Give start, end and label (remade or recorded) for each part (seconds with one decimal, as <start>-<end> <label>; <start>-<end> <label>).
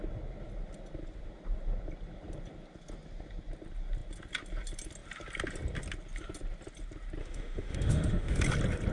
0.0-7.2 recorded; 7.2-8.4 remade; 8.4-8.9 recorded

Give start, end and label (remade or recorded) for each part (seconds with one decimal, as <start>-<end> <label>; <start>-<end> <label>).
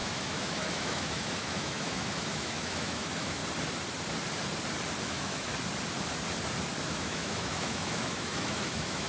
0.0-3.4 remade; 3.4-5.0 recorded; 5.0-5.5 remade; 5.5-6.8 recorded; 6.8-9.1 remade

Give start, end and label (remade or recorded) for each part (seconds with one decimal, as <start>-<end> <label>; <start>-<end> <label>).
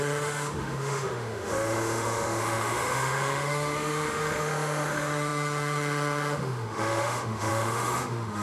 0.0-8.4 remade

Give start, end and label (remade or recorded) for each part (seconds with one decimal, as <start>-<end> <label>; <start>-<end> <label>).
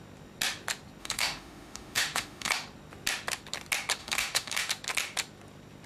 0.0-1.0 recorded; 1.0-2.5 remade; 2.5-4.0 recorded; 4.0-4.7 remade; 4.7-5.9 recorded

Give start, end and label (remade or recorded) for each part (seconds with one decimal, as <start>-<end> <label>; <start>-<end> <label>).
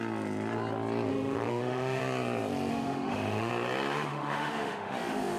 0.0-1.1 recorded; 1.1-2.0 remade; 2.0-2.7 recorded; 2.7-3.5 remade; 3.5-4.1 recorded; 4.1-5.4 remade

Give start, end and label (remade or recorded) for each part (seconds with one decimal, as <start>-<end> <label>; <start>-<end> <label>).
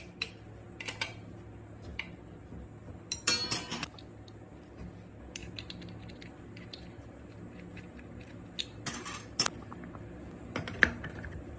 0.0-11.6 recorded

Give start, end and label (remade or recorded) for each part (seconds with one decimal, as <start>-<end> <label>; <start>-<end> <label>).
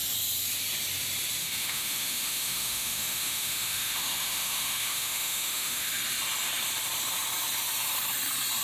0.0-1.4 recorded; 1.4-5.9 remade; 5.9-8.6 recorded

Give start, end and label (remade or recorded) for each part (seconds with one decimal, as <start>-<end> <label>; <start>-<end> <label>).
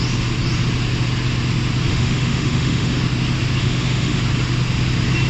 0.0-1.9 recorded; 1.9-3.0 remade; 3.0-3.6 recorded; 3.6-4.2 remade; 4.2-5.3 recorded